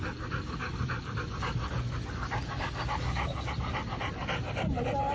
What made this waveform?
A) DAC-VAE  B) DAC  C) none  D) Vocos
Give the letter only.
C